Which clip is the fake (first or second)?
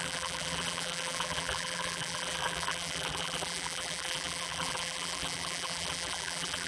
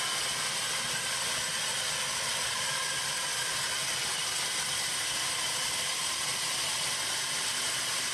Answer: first